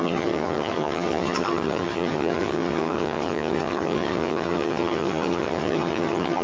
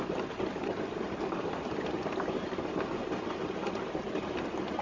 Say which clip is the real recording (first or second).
second